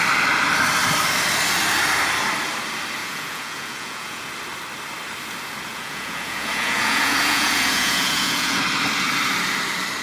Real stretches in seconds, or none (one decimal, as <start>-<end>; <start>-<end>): 0.0-3.0; 4.3-5.7; 8.6-10.0